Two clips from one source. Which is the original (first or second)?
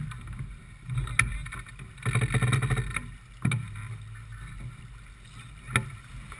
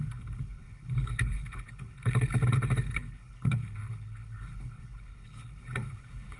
first